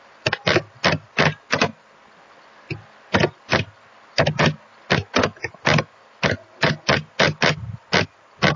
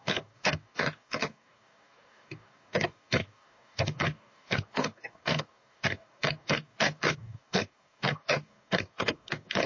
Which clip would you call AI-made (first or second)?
second